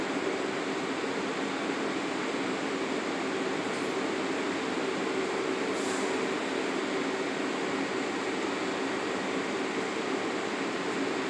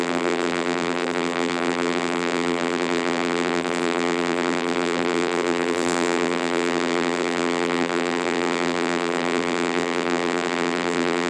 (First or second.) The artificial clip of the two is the second